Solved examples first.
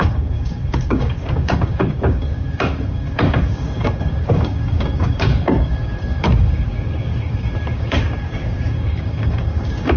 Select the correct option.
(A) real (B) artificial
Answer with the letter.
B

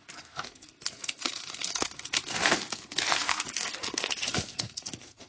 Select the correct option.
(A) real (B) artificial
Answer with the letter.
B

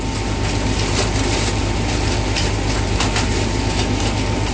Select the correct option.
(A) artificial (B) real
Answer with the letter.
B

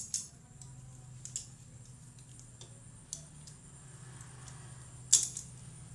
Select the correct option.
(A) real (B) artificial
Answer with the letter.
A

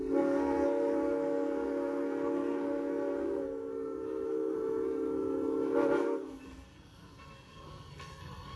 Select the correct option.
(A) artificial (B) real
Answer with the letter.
A